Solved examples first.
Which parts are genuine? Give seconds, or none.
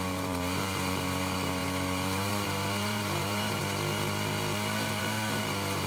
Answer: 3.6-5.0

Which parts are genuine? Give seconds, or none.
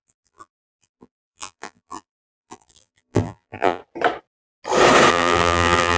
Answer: 3.8-5.1